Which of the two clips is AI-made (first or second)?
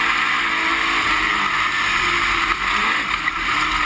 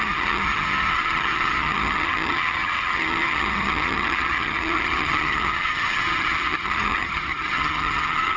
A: second